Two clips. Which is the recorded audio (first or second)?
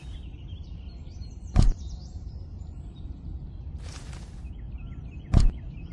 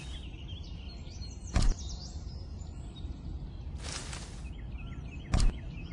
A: second